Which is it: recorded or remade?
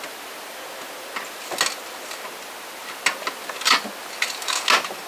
recorded